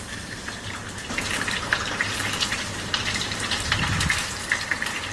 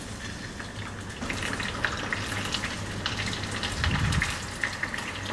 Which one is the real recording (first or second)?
second